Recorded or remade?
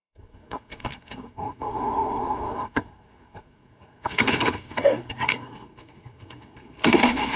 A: remade